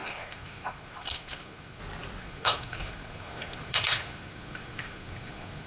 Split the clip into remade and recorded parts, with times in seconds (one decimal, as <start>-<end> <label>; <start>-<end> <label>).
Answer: 0.0-1.8 remade; 1.8-2.2 recorded; 2.2-5.7 remade